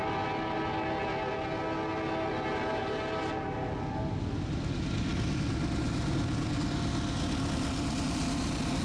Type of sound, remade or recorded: recorded